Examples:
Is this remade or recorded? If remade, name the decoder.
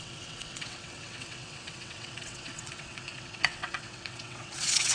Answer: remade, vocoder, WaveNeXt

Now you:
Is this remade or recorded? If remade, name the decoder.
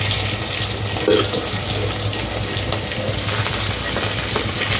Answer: recorded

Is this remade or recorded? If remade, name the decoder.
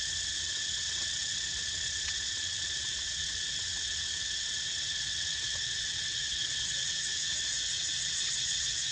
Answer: remade, vocoder, WaveNeXt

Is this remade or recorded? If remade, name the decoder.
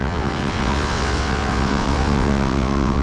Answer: remade, vocoder, WaveNeXt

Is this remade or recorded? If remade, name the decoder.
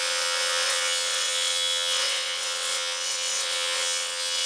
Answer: remade, vocoder, WaveNeXt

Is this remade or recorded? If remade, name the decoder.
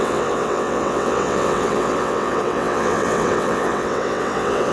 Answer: remade, vocoder, WaveNeXt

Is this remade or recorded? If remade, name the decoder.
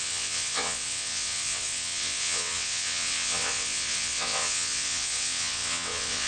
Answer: remade, vocoder, WaveNeXt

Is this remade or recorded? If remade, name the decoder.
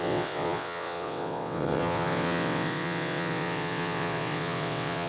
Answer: remade, vocoder, WaveNeXt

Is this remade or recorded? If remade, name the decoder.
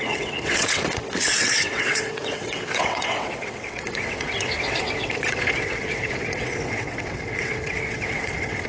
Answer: remade, vocoder, WaveNeXt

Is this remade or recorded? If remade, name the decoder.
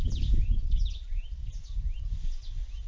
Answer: recorded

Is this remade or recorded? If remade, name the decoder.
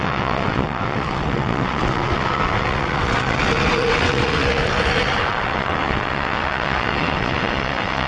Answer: remade, vocoder, WaveNeXt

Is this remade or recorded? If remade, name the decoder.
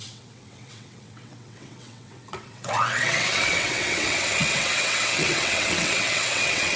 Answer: remade, vocoder, WaveNeXt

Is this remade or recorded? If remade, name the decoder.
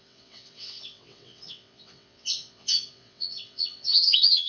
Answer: remade, vocoder, WaveNeXt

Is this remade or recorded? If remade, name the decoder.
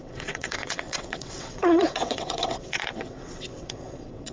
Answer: remade, vocoder, WaveNeXt